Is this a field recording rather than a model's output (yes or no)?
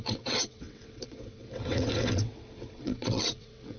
no